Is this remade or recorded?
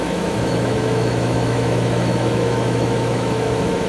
remade